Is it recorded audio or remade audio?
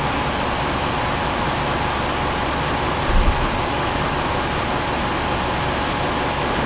recorded